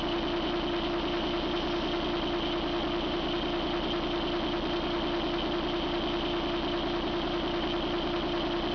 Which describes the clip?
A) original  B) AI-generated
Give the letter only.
A